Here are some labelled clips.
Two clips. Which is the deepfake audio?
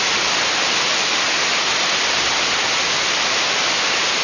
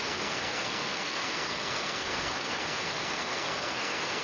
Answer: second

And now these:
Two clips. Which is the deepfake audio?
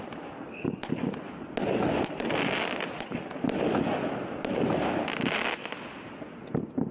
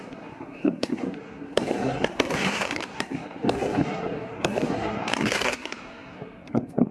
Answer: second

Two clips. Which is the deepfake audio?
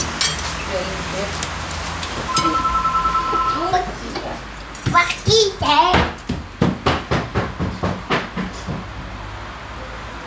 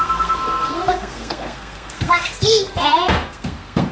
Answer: second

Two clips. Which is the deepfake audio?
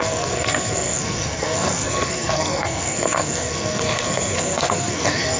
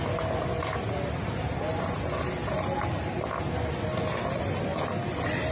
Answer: first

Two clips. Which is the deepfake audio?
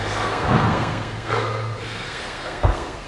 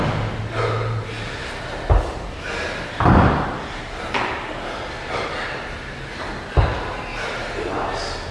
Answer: first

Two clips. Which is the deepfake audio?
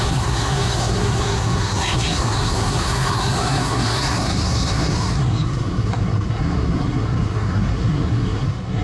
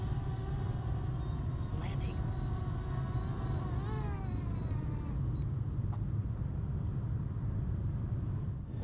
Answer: first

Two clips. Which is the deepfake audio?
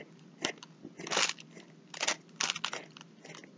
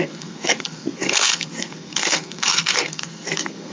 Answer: second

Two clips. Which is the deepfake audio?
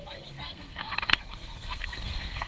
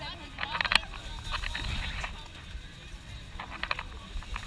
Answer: first